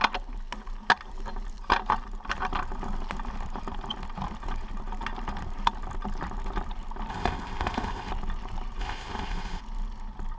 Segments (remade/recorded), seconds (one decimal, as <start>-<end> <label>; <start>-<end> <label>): 0.0-7.1 recorded; 7.1-8.1 remade; 8.1-8.8 recorded; 8.8-9.6 remade; 9.6-10.4 recorded